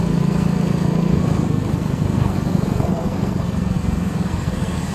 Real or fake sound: fake